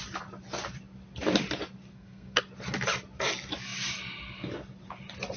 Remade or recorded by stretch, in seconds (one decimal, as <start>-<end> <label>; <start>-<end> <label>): 0.0-1.9 recorded; 1.9-2.4 remade; 2.4-5.4 recorded